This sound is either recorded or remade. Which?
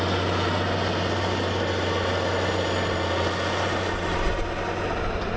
recorded